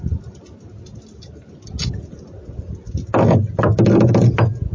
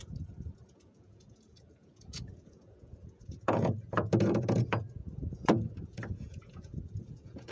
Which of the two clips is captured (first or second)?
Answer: first